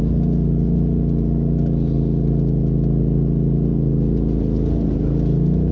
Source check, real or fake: real